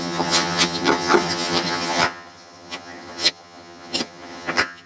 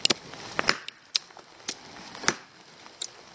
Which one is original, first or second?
second